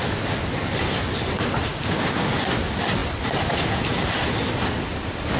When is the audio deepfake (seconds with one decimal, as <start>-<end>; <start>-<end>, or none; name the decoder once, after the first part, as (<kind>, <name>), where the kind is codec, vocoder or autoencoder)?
1.7-2.3 (codec, DAC)